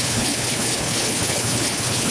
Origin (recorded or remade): remade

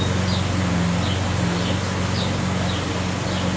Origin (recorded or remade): recorded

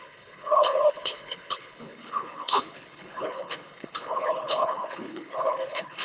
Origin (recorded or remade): remade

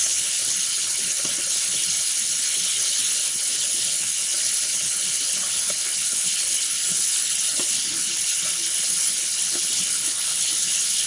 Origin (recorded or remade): remade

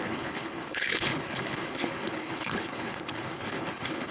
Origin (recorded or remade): remade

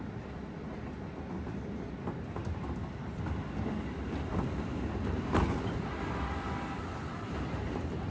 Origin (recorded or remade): recorded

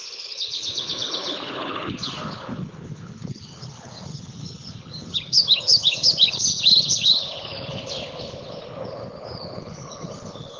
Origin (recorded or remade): remade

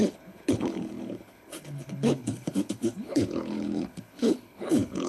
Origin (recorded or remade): remade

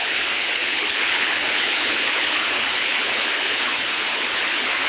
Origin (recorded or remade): remade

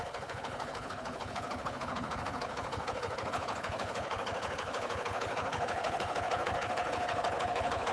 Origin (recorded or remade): remade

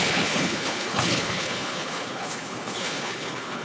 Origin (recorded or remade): remade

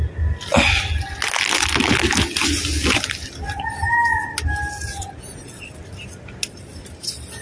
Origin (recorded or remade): recorded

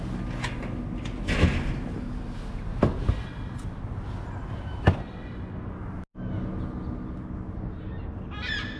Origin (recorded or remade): recorded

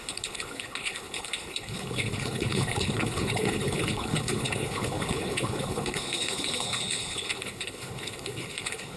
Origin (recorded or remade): remade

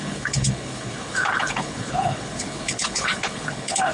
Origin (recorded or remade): remade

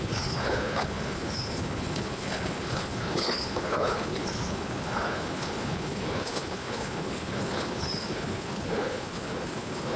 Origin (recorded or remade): remade